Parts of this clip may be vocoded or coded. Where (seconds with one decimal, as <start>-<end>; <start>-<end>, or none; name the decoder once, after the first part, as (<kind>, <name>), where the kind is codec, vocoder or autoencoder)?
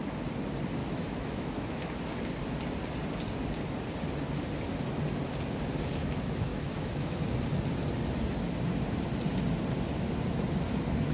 0.8-1.9 (autoencoder, DAC-VAE); 6.5-7.4